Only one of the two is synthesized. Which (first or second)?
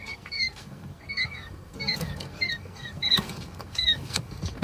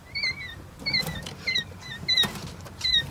first